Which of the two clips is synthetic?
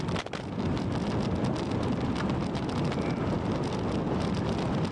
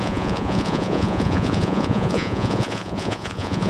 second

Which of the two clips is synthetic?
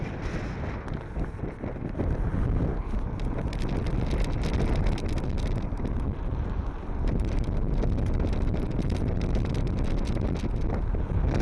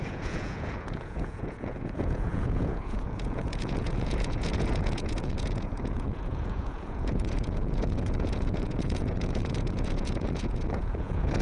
second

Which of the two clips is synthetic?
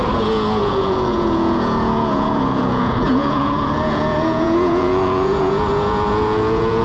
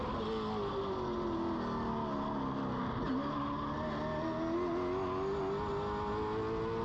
first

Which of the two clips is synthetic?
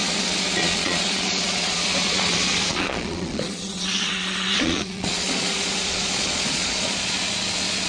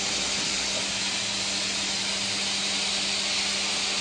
first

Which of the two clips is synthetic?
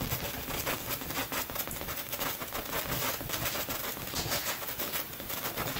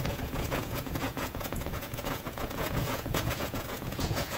second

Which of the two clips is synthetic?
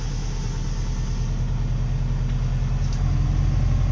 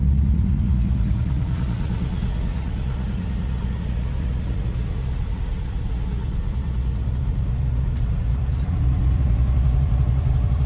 second